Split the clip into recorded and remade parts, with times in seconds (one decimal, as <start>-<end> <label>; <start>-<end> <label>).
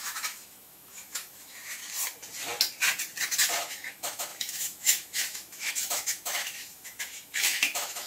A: 0.0-1.8 remade; 1.8-3.6 recorded; 3.6-8.1 remade